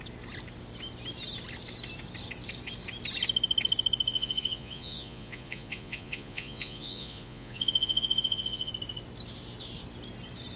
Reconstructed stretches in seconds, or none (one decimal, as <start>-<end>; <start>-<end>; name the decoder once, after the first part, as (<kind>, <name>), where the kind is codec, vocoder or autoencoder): 4.1-8.7 (vocoder, Vocos)